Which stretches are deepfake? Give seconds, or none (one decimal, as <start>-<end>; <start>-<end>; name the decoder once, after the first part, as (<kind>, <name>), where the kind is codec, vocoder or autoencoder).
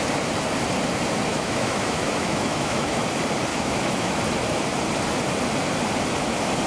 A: 1.3-3.0 (autoencoder, DAC-VAE); 3.5-4.2